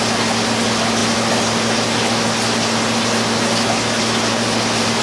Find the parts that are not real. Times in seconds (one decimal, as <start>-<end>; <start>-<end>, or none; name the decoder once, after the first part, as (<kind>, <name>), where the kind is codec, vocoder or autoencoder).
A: none